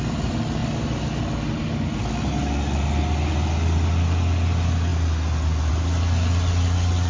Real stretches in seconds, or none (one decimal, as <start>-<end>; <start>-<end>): 0.0-7.1